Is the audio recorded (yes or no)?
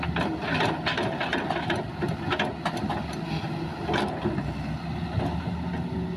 yes